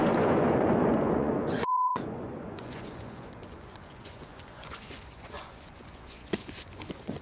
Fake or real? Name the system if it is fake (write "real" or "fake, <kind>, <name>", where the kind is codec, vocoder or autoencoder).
fake, vocoder, Vocos